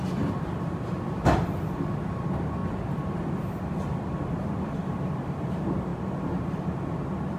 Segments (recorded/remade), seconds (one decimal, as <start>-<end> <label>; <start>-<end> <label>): 0.0-2.6 remade; 2.6-4.7 recorded; 4.7-5.9 remade; 5.9-6.4 recorded; 6.4-7.4 remade